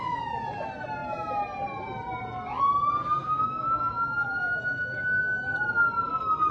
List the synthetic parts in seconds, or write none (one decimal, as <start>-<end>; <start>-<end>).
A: 3.2-5.2